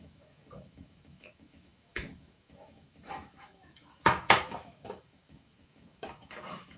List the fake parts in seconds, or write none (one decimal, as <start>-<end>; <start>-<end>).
0.0-6.8